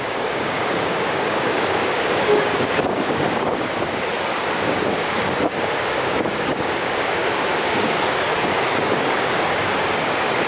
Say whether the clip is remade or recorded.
remade